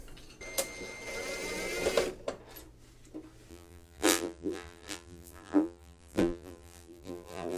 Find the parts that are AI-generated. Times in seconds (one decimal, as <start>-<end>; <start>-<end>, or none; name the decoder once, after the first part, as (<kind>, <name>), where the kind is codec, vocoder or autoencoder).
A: 3.5-7.6 (vocoder, BigVGAN v2)